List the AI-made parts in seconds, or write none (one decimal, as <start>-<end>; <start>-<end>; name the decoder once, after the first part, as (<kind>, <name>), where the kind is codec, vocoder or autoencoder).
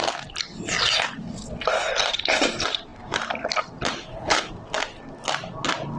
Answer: 3.9-4.5 (codec, HILCodec)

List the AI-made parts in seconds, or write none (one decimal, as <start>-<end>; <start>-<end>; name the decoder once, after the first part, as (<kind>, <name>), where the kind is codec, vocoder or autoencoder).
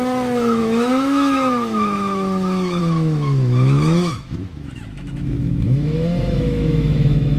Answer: 0.0-7.4 (autoencoder, DAC-VAE)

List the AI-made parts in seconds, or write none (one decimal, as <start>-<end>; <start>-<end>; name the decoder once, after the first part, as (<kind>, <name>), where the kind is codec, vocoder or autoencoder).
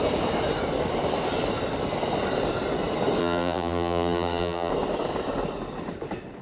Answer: 3.2-4.7 (vocoder, BigVGAN v2)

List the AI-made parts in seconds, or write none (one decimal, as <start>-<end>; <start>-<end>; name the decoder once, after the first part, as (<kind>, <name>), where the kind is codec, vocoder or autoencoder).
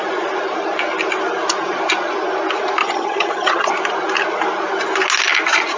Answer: 2.8-3.7 (vocoder, HiFi-GAN)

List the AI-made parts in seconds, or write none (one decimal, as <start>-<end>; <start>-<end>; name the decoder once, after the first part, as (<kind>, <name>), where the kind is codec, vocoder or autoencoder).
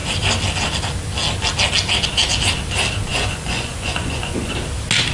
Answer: 3.1-4.5 (vocoder, Vocos)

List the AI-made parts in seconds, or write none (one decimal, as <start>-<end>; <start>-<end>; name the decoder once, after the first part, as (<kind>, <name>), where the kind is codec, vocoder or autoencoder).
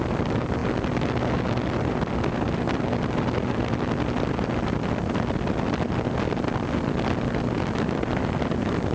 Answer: none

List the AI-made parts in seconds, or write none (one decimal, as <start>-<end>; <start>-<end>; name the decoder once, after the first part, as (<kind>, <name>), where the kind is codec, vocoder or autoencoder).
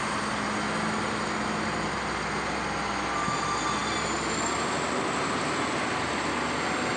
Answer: none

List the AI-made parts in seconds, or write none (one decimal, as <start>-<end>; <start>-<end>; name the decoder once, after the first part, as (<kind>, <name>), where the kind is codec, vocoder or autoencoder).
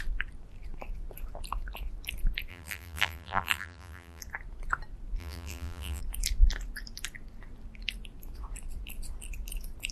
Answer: 2.5-4.2 (vocoder, BigVGAN v2); 5.2-6.0